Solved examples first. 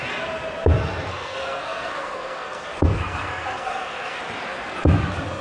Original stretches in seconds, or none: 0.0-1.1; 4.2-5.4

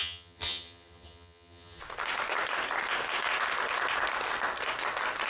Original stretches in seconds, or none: 1.8-5.3

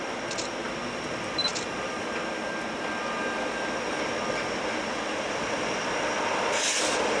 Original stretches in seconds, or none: 0.0-7.2

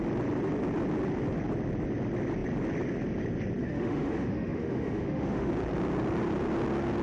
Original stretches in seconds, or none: 0.0-3.6; 5.5-7.0

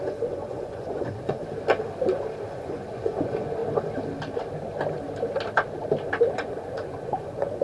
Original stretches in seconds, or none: 1.4-2.5; 3.6-6.3

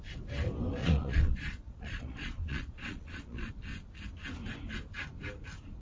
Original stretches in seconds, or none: 0.0-0.8; 3.5-5.8

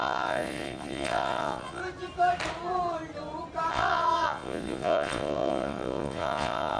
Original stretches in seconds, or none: 1.8-3.7